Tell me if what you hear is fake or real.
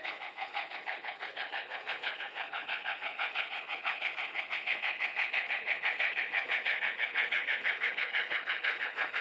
fake